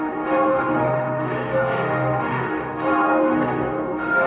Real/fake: fake